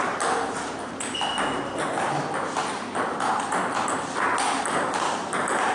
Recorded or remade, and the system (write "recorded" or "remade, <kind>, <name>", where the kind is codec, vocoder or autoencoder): recorded